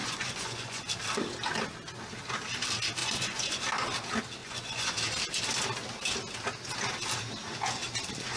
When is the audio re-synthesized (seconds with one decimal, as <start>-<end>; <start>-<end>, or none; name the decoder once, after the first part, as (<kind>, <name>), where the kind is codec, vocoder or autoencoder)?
0.0-0.8 (vocoder, Vocos); 3.0-3.6; 4.4-4.9